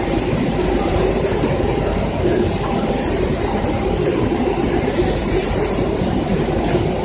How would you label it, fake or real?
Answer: fake